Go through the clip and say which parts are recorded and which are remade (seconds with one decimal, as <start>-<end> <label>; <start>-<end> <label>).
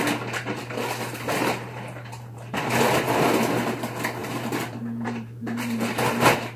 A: 0.0-1.4 recorded; 1.4-2.7 remade; 2.7-4.2 recorded; 4.2-6.6 remade